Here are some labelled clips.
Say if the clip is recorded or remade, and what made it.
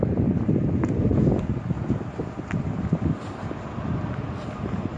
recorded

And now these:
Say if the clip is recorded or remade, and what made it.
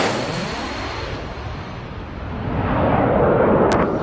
recorded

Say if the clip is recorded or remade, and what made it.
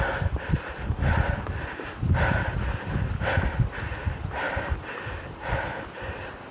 recorded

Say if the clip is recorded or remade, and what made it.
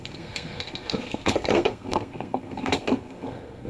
remade, codec, SNAC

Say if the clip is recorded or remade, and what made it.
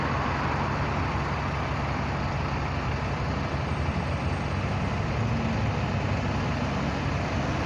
recorded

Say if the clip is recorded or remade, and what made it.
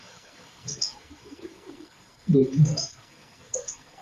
remade, codec, SNAC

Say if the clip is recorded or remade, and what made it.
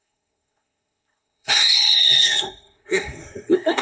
remade, codec, SNAC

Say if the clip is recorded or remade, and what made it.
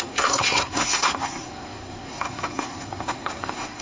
remade, codec, SNAC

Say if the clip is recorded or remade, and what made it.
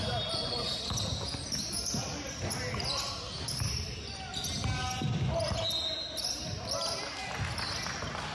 recorded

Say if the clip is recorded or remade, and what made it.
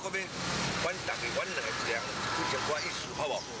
recorded